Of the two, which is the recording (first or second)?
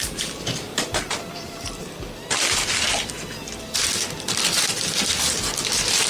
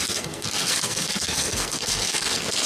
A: first